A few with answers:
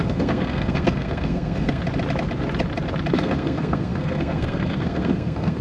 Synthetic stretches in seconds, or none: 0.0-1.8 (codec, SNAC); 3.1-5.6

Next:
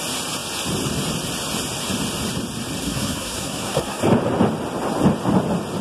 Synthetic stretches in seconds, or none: 2.8-4.0 (codec, SNAC)

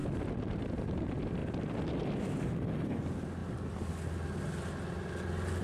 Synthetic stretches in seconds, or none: 0.0-0.6 (vocoder, BigVGAN v2); 1.4-2.4

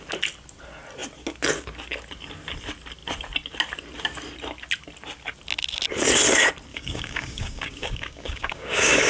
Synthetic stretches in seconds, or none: 6.7-9.1 (codec, DAC)

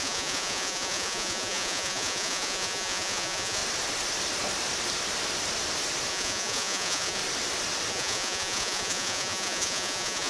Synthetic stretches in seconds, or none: 0.0-3.6 (vocoder, Vocos); 6.1-7.2; 7.9-10.3